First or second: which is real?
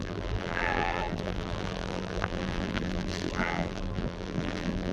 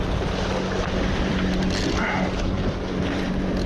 second